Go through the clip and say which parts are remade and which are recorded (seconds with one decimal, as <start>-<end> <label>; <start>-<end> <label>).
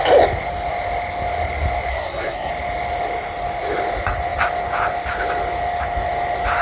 0.0-1.9 recorded; 1.9-2.5 remade; 2.5-6.6 recorded